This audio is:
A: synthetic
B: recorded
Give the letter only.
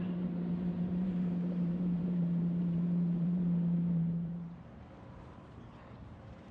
A